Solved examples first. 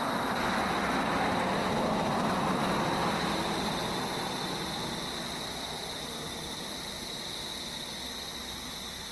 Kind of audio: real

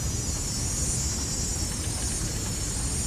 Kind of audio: real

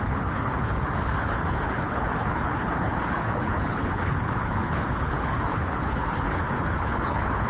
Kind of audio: fake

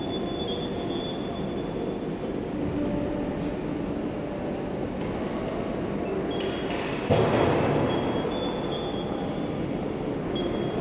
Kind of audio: real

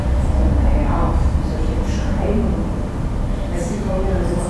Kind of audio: real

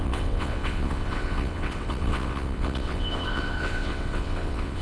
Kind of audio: fake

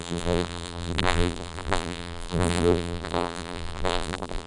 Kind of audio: fake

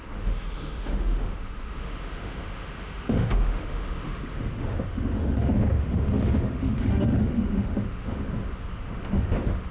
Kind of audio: fake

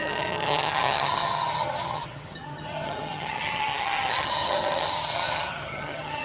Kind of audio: fake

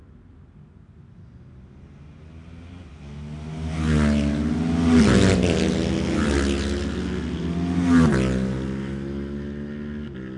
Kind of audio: real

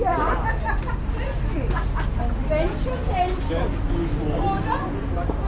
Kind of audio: real